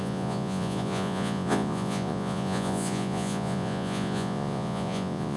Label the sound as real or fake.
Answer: fake